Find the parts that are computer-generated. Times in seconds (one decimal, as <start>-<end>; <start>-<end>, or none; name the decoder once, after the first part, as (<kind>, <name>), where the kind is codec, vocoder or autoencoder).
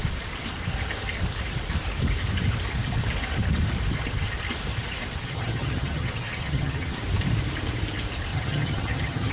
5.2-7.0 (vocoder, HiFi-GAN); 8.3-9.3